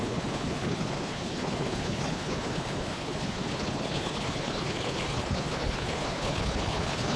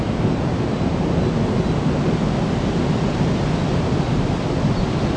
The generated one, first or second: first